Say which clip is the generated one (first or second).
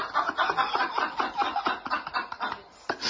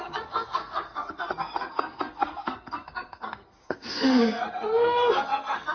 second